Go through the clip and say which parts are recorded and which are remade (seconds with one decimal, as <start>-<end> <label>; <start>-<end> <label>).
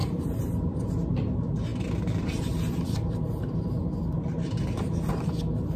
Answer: 0.0-0.9 remade; 0.9-5.8 recorded